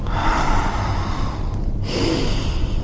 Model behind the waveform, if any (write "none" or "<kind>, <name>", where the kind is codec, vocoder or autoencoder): none